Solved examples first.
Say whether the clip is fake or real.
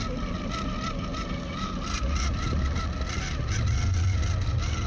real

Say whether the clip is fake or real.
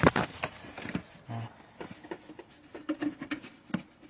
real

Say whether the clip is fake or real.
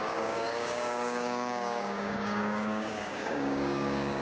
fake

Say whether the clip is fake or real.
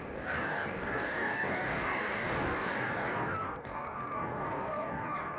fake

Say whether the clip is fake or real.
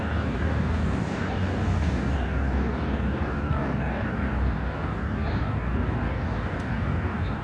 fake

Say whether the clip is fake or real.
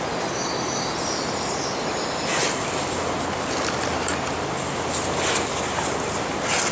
real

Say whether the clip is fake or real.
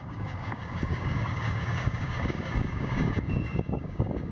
fake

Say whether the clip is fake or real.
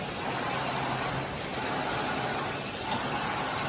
real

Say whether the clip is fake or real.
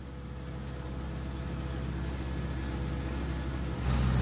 real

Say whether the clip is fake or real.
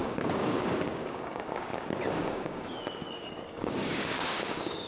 fake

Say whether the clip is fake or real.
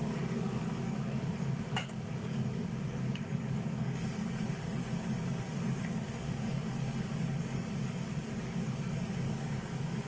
fake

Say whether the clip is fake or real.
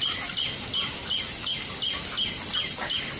real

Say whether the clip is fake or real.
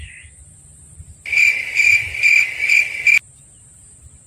real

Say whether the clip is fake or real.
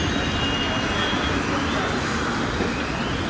real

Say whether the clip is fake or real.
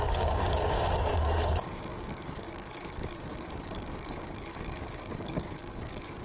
fake